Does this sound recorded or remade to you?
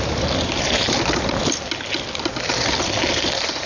recorded